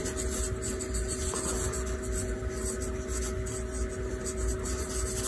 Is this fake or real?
real